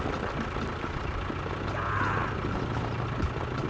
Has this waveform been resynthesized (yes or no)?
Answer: no